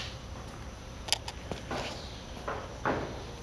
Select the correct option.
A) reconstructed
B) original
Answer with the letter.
B